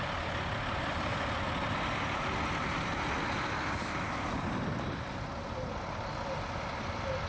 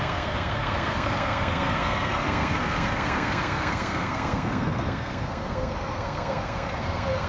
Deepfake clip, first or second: second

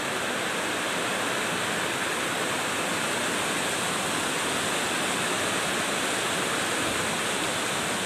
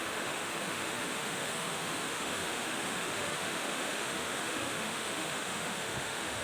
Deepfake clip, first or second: second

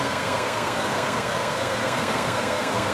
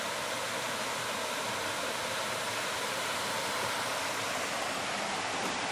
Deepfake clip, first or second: first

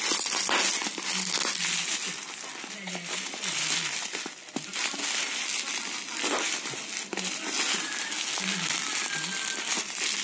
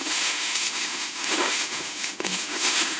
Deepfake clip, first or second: second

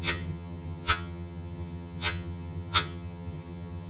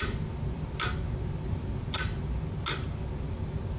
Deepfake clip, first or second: first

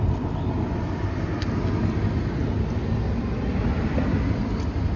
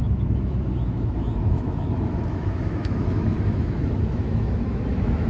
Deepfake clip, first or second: second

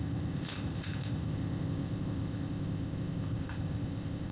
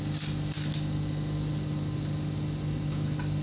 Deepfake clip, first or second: first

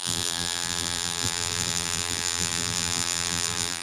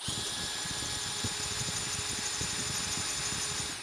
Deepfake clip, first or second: first